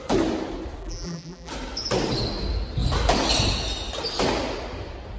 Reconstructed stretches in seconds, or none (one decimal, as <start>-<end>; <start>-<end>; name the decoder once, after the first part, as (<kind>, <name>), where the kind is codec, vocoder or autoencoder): 0.8-1.5 (vocoder, BigVGAN v2)